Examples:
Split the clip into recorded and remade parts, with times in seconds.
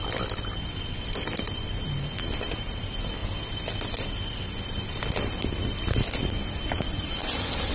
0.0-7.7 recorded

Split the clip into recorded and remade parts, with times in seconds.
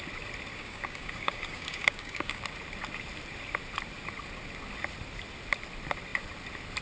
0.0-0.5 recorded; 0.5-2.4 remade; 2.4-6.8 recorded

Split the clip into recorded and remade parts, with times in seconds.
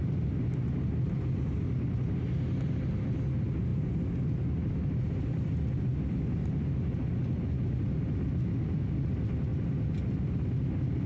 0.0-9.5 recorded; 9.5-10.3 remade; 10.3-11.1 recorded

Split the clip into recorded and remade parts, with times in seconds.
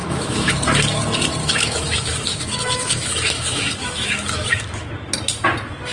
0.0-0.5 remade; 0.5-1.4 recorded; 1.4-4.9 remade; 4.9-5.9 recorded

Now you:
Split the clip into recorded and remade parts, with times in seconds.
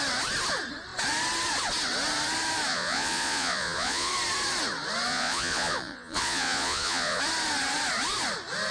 0.0-2.7 recorded; 2.7-4.1 remade; 4.1-5.1 recorded; 5.1-7.2 remade; 7.2-8.7 recorded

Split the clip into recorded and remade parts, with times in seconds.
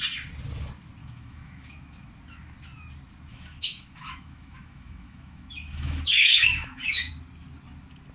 0.0-1.0 recorded; 1.0-2.1 remade; 2.1-3.3 recorded; 3.3-7.1 remade; 7.1-8.1 recorded